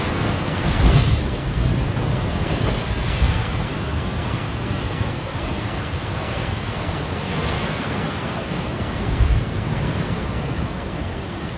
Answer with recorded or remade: remade